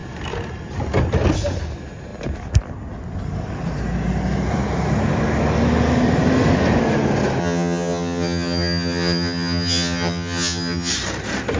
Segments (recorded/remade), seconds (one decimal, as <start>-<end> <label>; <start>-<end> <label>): 0.0-7.4 recorded; 7.4-10.9 remade; 10.9-11.6 recorded